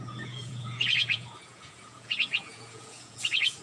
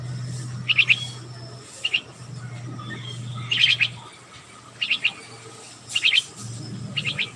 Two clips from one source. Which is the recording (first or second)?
second